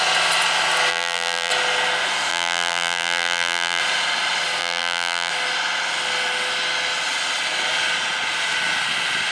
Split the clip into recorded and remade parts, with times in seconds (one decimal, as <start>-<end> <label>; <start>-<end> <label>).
0.0-0.9 recorded; 0.9-1.5 remade; 1.5-2.3 recorded; 2.3-3.8 remade; 3.8-4.6 recorded; 4.6-5.3 remade; 5.3-9.3 recorded